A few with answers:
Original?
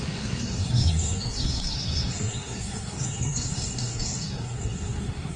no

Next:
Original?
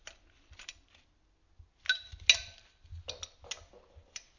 yes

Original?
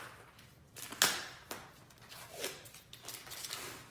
yes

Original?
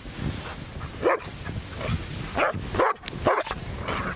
yes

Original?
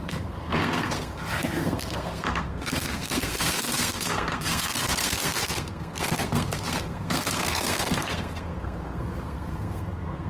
no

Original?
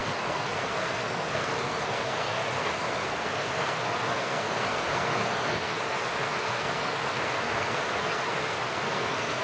no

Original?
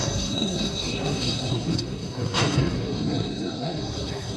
no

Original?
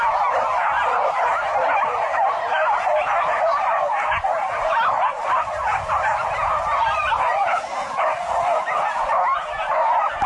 yes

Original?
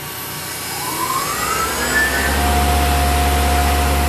yes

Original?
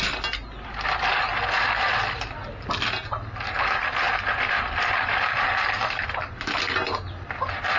yes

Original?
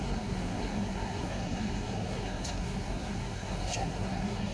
no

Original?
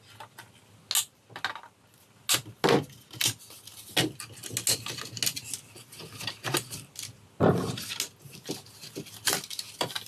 yes